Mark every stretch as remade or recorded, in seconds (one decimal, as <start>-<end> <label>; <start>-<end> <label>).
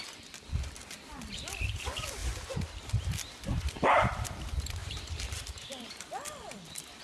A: 0.0-2.2 remade; 2.2-2.7 recorded; 2.7-7.0 remade